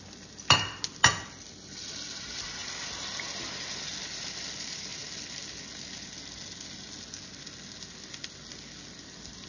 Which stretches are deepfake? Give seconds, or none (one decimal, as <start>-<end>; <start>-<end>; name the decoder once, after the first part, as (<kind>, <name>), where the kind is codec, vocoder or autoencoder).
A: none